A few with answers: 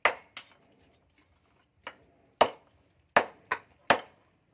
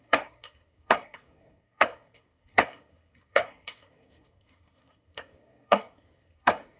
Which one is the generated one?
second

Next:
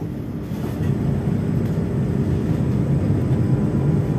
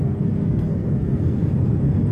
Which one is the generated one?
second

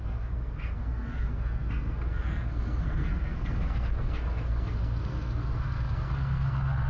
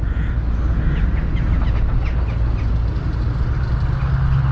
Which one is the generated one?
first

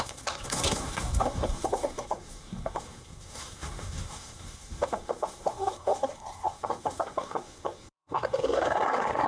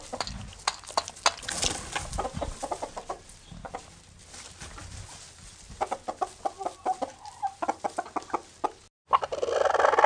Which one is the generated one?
first